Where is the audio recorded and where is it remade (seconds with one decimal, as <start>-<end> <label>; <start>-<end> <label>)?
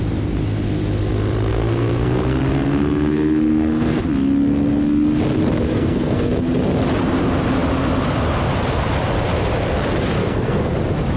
0.0-1.5 recorded; 1.5-4.0 remade; 4.0-5.7 recorded; 5.7-6.3 remade; 6.3-10.2 recorded; 10.2-10.7 remade; 10.7-11.2 recorded